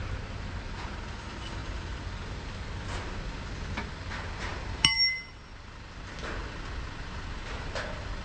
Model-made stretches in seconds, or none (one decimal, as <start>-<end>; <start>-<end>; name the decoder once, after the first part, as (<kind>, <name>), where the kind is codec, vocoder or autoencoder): none